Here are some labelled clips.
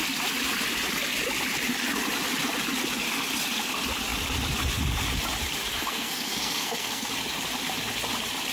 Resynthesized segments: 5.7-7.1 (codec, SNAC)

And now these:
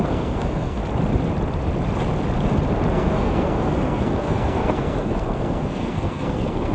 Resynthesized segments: 0.0-0.8 (codec, SNAC); 2.9-6.7

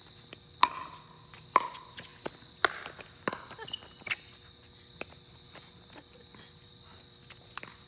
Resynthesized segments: none

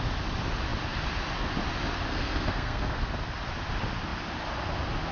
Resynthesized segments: 2.1-3.1 (codec, SNAC)

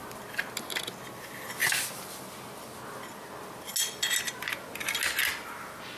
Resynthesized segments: none

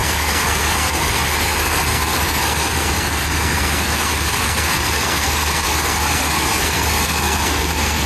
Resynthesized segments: 0.0-8.1 (codec, SNAC)

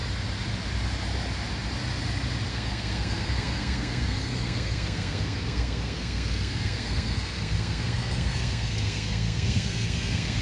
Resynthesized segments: 2.5-10.4 (codec, SNAC)